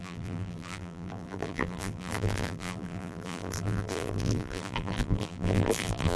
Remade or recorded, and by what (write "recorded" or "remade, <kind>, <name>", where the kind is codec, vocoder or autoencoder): remade, vocoder, BigVGAN v2